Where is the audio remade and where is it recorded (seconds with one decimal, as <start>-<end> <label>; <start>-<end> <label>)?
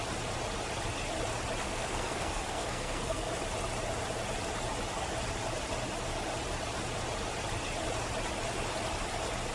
0.0-1.6 recorded; 1.6-3.3 remade; 3.3-9.5 recorded